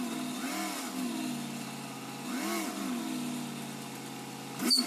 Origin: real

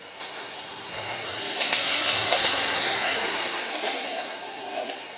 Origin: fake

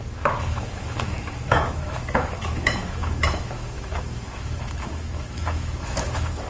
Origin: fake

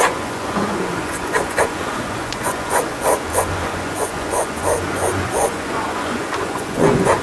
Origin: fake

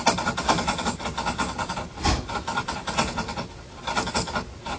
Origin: real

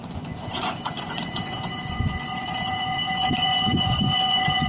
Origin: fake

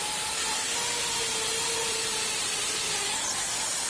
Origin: real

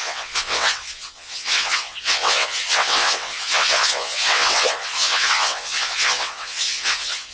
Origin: fake